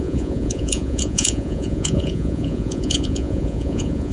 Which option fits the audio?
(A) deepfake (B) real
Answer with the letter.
A